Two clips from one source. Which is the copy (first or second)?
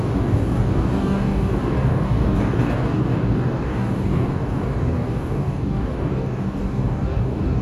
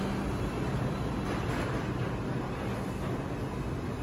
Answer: first